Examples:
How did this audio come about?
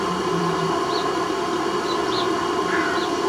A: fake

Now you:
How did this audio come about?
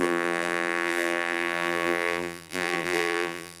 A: fake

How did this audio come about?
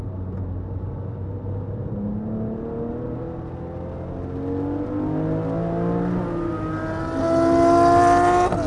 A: real